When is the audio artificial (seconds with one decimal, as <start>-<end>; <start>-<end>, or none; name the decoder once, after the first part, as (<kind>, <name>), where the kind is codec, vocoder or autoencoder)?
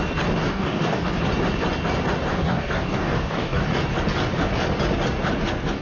0.4-1.2 (codec, DAC); 2.3-3.6